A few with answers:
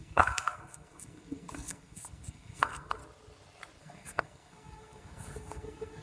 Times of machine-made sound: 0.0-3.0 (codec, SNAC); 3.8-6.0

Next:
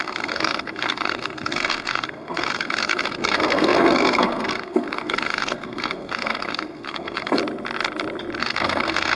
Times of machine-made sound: 0.0-7.4 (codec, SNAC); 8.4-9.2

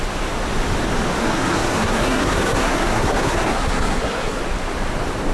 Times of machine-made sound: 1.2-4.4 (codec, SNAC)

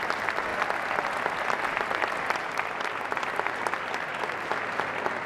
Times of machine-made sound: none

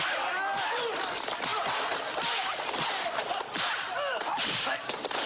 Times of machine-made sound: none

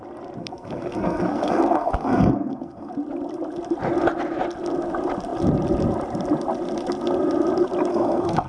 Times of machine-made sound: 0.4-2.9 (codec, SNAC); 7.9-8.5